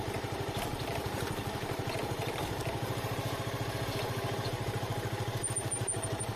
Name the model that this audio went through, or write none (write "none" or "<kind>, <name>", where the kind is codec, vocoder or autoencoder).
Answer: vocoder, BigVGAN v2